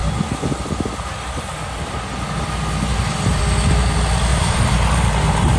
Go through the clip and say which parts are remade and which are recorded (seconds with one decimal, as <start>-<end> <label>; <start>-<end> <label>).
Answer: 0.0-4.3 recorded; 4.3-5.6 remade